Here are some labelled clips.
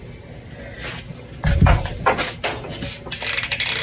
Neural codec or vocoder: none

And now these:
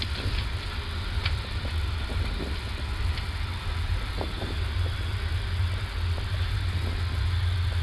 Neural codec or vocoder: none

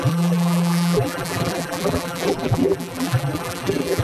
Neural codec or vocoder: vocoder, BigVGAN v2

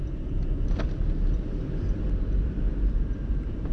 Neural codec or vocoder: vocoder, BigVGAN v2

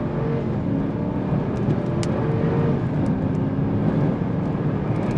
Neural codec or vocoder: none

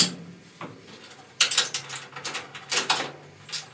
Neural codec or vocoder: vocoder, BigVGAN v2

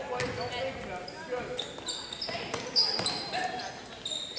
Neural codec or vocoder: none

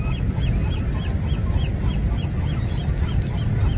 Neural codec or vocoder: none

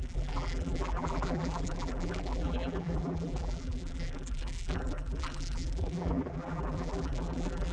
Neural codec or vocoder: vocoder, BigVGAN v2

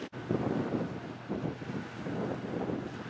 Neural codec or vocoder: none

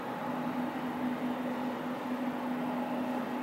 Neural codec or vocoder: none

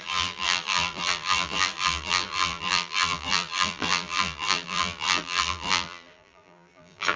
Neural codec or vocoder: vocoder, BigVGAN v2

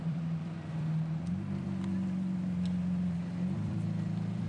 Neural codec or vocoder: vocoder, BigVGAN v2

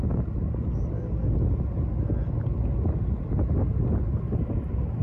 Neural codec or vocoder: none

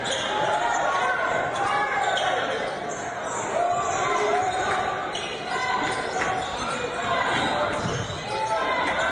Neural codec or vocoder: none